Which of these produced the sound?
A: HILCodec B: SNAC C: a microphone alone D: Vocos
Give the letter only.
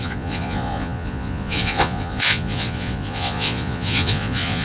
D